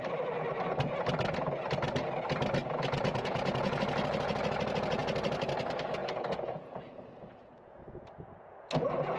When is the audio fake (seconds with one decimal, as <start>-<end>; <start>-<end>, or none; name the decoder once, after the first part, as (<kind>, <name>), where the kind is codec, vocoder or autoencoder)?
2.6-3.8 (vocoder, Vocos); 6.0-9.2